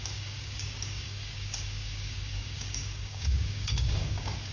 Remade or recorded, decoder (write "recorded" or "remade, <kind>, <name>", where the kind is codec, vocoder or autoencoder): remade, codec, DAC